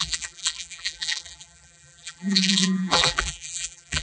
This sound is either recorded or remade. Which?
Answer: remade